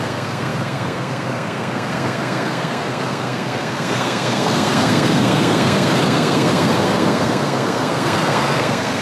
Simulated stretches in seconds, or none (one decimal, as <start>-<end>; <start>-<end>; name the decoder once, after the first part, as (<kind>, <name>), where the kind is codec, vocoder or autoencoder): 0.0-9.0 (codec, SNAC)